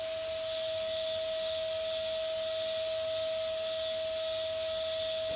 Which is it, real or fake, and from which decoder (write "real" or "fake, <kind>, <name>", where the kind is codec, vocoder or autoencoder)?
real